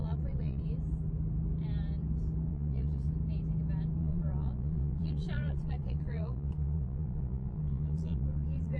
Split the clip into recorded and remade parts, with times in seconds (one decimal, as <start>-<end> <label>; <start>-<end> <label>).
0.0-0.6 remade; 0.6-2.5 recorded; 2.5-3.1 remade; 3.1-4.0 recorded; 4.0-8.8 remade